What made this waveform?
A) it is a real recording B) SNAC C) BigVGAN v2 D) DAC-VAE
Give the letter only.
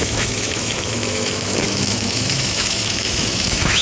D